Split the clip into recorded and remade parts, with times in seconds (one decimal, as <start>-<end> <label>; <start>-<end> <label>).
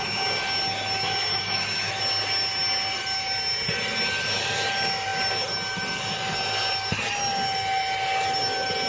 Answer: 0.0-1.3 recorded; 1.3-2.0 remade; 2.0-8.9 recorded